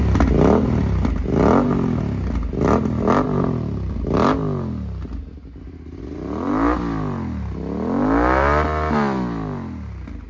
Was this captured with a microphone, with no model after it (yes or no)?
yes